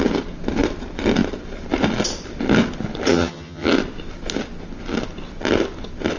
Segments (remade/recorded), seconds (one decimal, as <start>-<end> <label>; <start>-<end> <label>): 0.0-3.1 recorded; 3.1-3.7 remade; 3.7-6.2 recorded